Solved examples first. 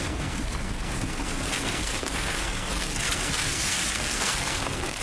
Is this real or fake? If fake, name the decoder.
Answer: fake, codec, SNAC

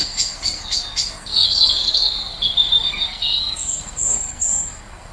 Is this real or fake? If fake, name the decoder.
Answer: fake, codec, SNAC